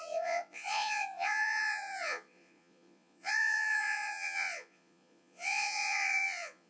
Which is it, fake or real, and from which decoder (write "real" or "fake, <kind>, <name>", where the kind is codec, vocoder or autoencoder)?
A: fake, vocoder, Vocos